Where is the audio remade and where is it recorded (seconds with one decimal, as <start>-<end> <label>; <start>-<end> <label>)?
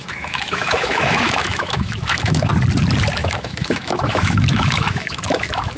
0.0-2.5 remade; 2.5-3.2 recorded; 3.2-5.8 remade